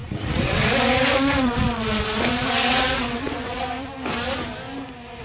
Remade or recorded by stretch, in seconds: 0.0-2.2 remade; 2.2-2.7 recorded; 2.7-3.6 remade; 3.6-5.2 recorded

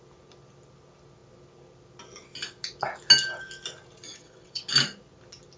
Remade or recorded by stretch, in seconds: 0.0-4.1 recorded; 4.1-4.6 remade; 4.6-5.6 recorded

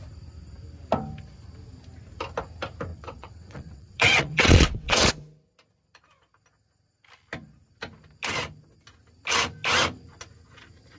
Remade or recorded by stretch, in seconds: 0.0-2.9 recorded; 2.9-5.1 remade; 5.1-11.0 recorded